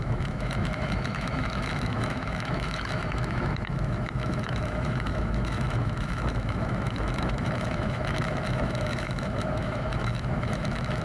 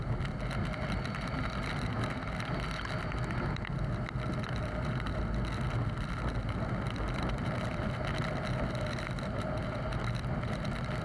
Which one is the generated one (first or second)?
first